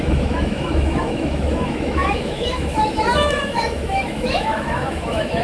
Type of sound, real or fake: fake